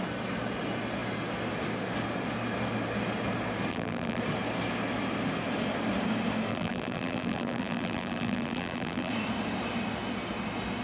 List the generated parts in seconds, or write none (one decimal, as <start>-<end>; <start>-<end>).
3.7-4.2; 6.5-9.1